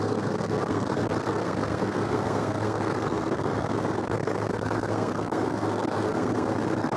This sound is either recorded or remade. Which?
remade